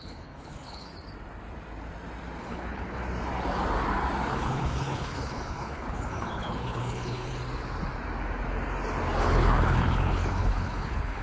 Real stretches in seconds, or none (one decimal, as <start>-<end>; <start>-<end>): 0.9-2.4; 3.0-4.3; 7.3-9.2